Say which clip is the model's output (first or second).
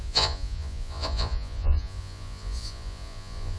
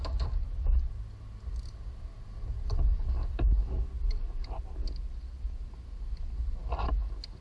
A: first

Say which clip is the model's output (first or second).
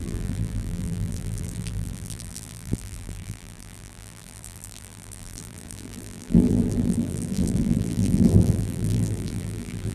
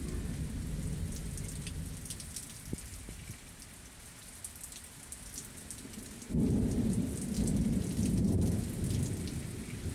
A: first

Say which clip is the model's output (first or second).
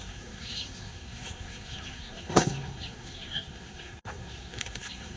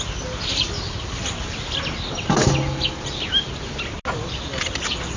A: first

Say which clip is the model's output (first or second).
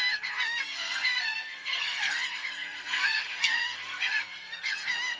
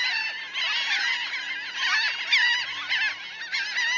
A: first